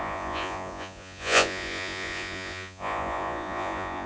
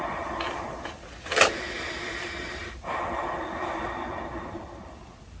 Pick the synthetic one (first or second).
first